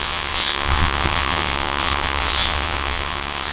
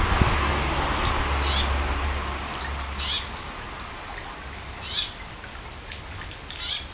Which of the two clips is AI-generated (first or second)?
first